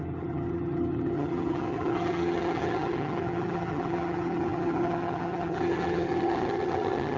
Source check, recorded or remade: remade